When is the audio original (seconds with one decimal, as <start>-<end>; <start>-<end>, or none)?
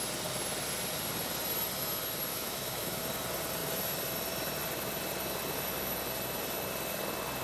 0.0-2.3; 3.0-7.4